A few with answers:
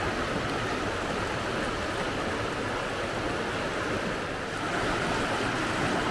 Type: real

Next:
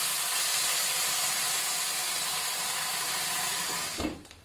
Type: real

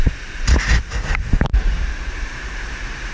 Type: fake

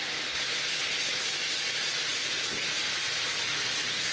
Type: real